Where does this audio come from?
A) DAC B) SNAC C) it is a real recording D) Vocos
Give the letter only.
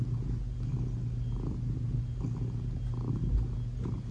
C